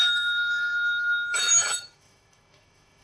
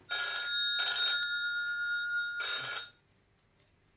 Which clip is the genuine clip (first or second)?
second